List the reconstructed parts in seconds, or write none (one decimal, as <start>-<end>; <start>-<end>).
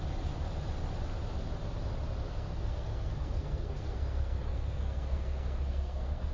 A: 2.3-6.3